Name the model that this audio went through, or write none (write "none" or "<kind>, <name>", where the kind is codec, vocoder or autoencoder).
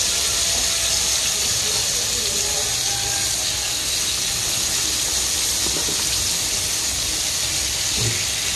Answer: none